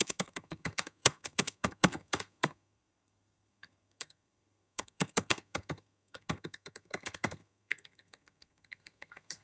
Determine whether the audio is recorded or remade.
remade